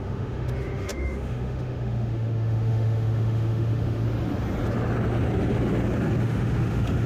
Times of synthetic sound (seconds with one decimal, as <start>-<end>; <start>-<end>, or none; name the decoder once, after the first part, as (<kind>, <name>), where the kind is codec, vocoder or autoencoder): 0.0-4.0 (autoencoder, DAC-VAE); 6.2-7.1